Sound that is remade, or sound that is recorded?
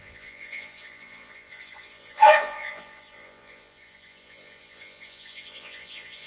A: remade